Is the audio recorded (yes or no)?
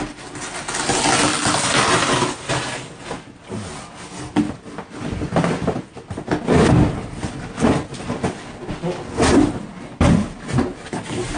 yes